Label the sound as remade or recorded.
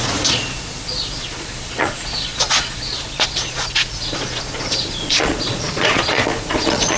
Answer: remade